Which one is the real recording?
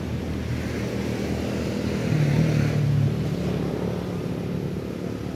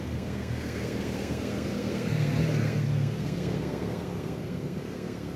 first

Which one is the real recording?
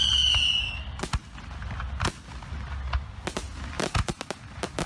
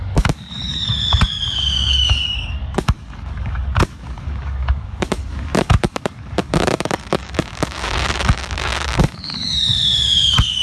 first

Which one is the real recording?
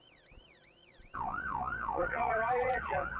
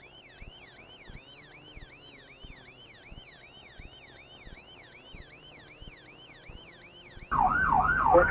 second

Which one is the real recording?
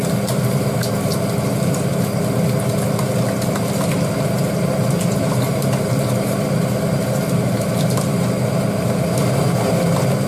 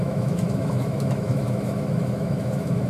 first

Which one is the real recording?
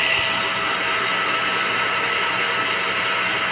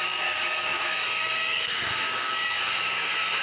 first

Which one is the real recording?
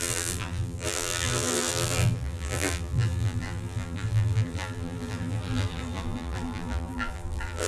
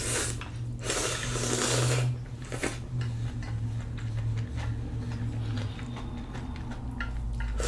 second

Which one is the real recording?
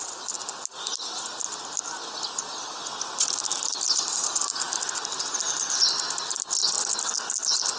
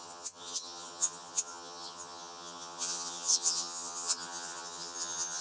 first